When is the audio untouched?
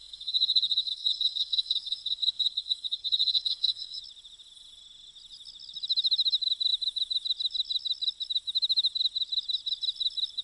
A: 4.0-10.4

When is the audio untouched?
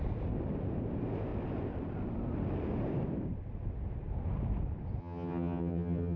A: 0.0-5.0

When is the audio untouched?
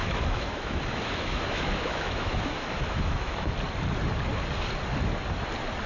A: 3.5-5.9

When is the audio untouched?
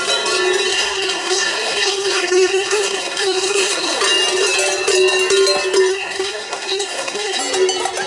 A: 0.0-0.7; 4.0-5.9; 7.4-8.1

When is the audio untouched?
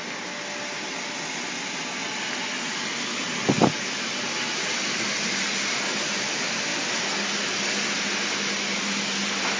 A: 0.0-9.6